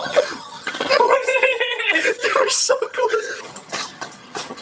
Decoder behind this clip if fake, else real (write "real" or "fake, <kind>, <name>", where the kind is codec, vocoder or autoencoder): fake, vocoder, HiFi-GAN